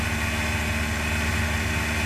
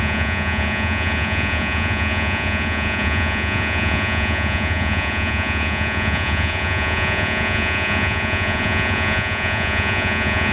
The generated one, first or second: second